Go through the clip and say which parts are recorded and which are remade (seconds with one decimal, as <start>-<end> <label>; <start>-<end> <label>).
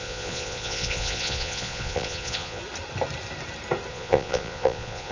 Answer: 0.0-2.6 remade; 2.6-3.9 recorded; 3.9-5.1 remade